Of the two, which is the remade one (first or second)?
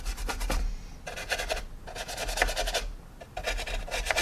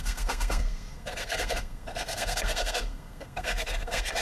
second